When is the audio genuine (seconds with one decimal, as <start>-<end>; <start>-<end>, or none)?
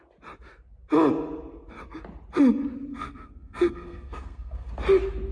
0.0-2.9; 4.7-5.3